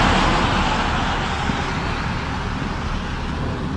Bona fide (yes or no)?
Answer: yes